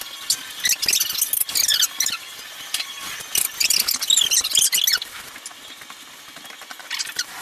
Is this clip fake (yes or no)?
no